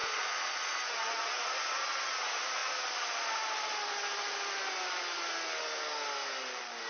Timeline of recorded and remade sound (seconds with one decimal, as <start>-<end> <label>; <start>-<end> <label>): 0.0-0.7 remade; 0.7-6.9 recorded